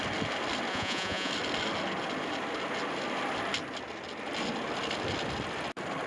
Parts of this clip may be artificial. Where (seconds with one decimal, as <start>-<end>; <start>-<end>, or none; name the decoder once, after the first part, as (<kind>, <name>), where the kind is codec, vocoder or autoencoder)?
0.7-1.3 (vocoder, Vocos)